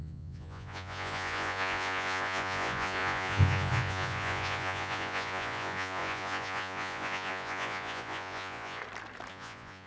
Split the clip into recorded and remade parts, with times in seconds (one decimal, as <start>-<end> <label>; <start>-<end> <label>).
0.0-8.8 remade; 8.8-9.3 recorded; 9.3-9.9 remade